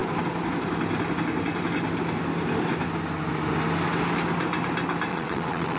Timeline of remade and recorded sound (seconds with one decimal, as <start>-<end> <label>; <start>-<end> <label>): 0.0-5.1 recorded; 5.1-5.8 remade